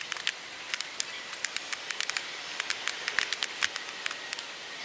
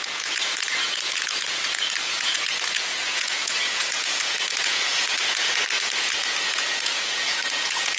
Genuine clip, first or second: first